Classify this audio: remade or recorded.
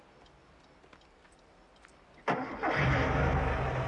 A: recorded